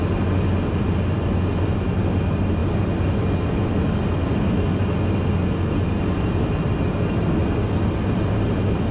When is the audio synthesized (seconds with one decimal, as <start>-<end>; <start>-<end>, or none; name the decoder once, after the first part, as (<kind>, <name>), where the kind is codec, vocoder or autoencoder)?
none